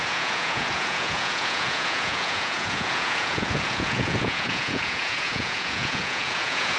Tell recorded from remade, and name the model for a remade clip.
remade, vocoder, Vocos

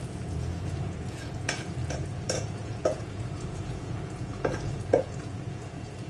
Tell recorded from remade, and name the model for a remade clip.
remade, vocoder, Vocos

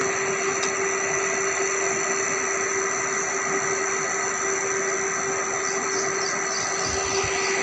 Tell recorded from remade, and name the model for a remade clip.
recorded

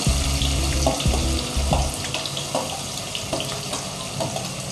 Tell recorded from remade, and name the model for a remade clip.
recorded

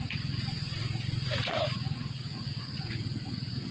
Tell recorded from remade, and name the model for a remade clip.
remade, vocoder, Vocos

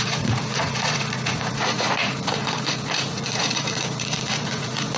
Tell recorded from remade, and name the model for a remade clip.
remade, vocoder, Vocos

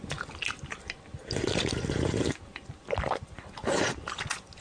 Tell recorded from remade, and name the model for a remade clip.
recorded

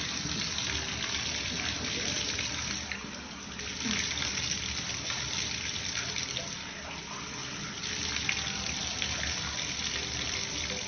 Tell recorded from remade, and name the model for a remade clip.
recorded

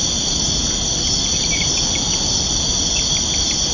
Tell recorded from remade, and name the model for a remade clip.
recorded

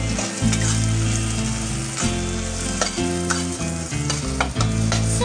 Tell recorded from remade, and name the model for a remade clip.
recorded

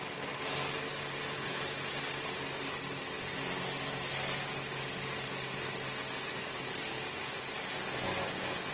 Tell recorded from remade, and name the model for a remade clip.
recorded